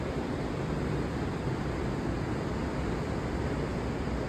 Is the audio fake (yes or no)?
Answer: no